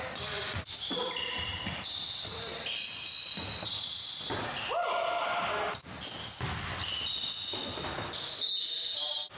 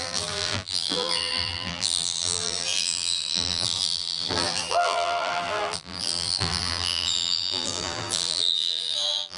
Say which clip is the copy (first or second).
second